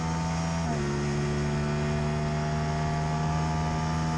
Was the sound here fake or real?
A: real